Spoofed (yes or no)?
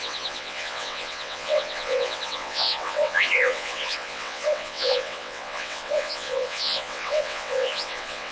yes